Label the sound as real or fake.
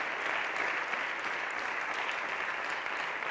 real